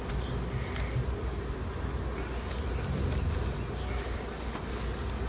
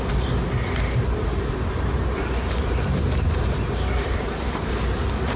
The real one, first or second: first